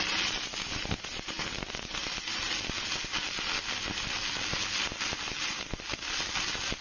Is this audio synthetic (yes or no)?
no